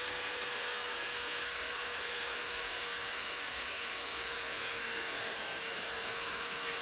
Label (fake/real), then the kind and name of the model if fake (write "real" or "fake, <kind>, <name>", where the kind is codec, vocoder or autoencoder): fake, codec, SNAC